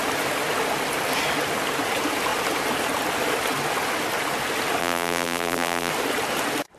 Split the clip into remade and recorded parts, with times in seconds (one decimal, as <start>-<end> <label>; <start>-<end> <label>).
0.0-4.8 recorded; 4.8-5.9 remade; 5.9-6.8 recorded